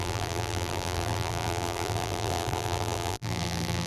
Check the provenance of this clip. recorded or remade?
remade